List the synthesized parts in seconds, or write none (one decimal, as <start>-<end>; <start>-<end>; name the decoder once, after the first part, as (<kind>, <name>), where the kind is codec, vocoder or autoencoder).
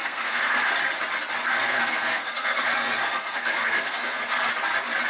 0.0-0.7 (codec, SNAC); 1.4-4.5